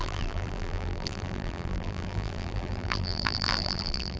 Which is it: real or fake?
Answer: fake